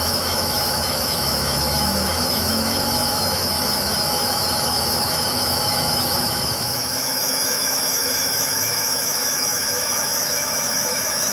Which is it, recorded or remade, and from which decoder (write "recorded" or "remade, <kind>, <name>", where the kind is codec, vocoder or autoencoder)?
remade, autoencoder, DAC-VAE